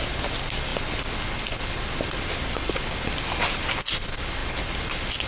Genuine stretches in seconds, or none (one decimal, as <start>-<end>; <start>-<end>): 0.0-5.3